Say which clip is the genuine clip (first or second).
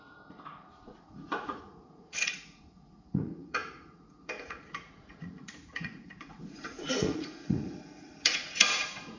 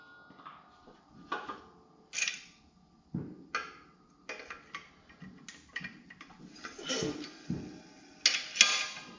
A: second